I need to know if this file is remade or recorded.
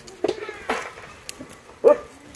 recorded